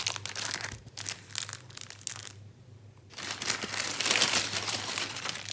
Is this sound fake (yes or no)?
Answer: no